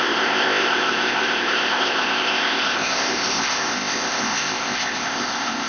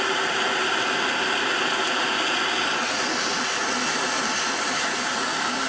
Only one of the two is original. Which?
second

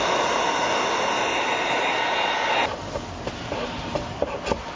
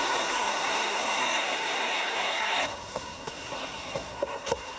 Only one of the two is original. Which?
first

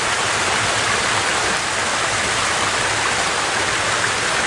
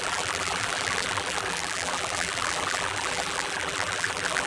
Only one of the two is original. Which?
first